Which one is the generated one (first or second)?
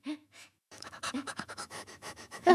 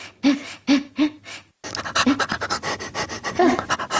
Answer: first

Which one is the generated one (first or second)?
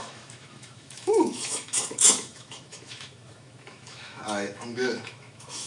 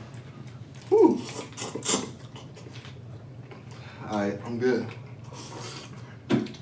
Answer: first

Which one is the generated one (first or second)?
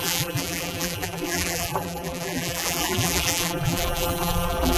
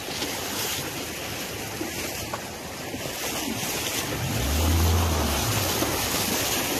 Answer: first